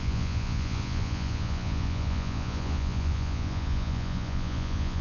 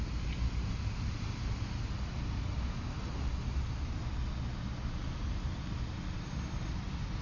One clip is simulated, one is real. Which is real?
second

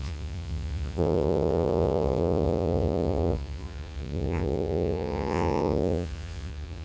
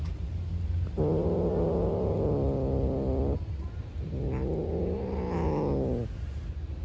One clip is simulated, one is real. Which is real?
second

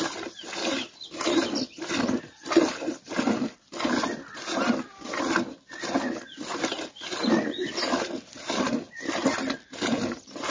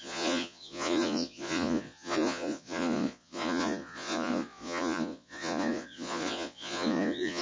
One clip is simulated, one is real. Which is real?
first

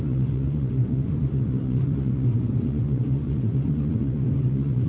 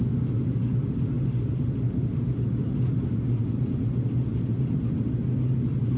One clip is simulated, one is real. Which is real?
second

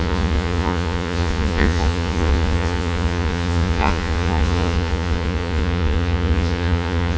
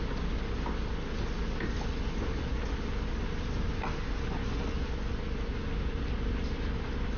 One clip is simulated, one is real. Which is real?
second